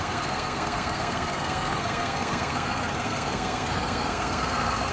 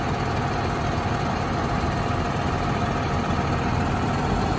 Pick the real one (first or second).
second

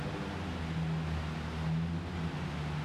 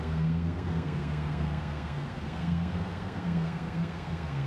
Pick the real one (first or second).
first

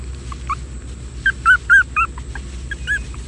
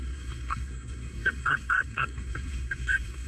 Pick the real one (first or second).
first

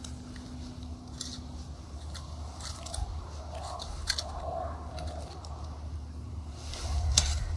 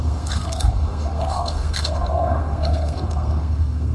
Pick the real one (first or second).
first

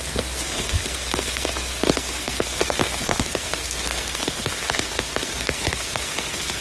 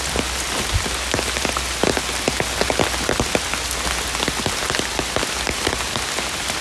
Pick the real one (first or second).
second